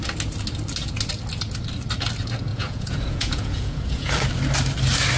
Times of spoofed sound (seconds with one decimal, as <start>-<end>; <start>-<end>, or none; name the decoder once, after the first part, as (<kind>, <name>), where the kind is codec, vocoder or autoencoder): 2.5-4.1 (vocoder, Vocos)